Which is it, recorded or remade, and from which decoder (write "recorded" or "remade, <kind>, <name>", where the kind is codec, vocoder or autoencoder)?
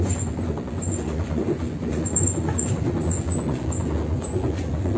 remade, vocoder, Vocos